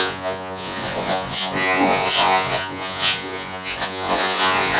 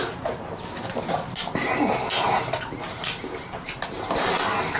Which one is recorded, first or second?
second